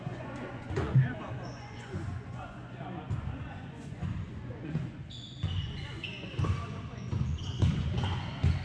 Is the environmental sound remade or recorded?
remade